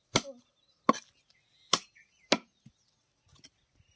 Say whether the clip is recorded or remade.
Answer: recorded